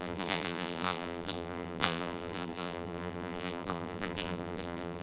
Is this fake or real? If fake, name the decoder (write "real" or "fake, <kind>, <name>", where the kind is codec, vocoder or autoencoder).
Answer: fake, vocoder, BigVGAN v2